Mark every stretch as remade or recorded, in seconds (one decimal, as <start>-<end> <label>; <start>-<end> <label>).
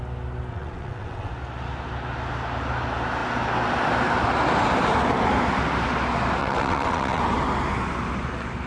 0.0-0.5 recorded; 0.5-1.3 remade; 1.3-6.4 recorded; 6.4-7.2 remade; 7.2-8.7 recorded